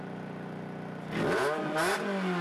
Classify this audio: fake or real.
real